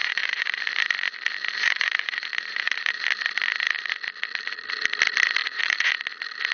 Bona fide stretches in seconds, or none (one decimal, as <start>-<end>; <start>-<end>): 0.6-1.6; 3.0-5.4; 5.9-6.5